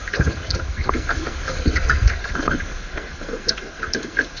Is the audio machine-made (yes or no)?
yes